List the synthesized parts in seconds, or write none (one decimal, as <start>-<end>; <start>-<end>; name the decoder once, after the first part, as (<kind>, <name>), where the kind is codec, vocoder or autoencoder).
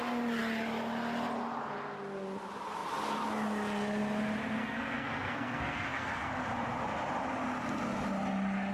4.6-6.3 (codec, SNAC)